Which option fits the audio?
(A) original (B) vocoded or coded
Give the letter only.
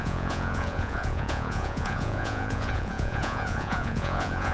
B